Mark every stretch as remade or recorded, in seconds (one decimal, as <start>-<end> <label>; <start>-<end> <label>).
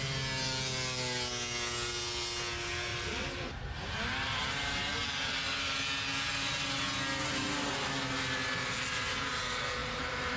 0.0-2.9 recorded; 2.9-3.6 remade; 3.6-9.8 recorded; 9.8-10.4 remade